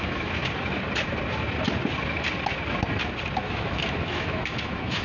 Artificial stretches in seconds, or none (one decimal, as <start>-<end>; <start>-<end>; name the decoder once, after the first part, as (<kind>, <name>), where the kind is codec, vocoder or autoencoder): 0.0-0.4 (autoencoder, DAC-VAE); 3.4-5.0